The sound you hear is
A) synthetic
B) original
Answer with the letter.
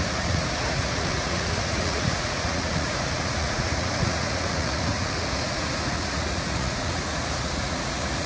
A